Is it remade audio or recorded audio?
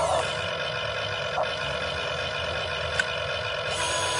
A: recorded